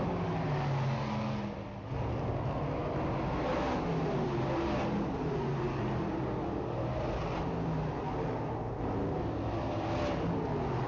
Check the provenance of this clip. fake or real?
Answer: real